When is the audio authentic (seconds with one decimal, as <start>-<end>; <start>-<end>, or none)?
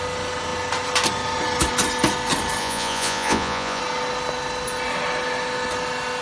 0.0-2.6; 3.8-6.2